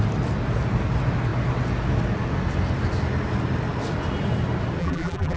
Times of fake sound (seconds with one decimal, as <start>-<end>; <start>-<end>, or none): 4.8-5.4